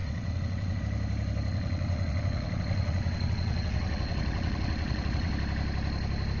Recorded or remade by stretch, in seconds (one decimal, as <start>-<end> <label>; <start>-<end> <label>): 0.0-0.8 remade; 0.8-1.5 recorded; 1.5-5.3 remade; 5.3-6.4 recorded